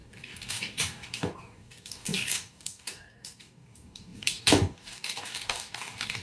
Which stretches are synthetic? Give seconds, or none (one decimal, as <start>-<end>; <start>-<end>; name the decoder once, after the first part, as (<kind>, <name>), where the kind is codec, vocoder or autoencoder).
0.0-6.2 (codec, DAC)